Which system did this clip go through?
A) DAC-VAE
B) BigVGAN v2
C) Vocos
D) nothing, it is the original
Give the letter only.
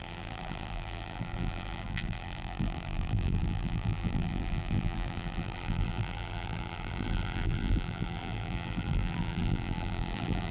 B